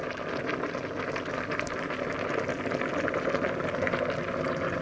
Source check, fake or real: real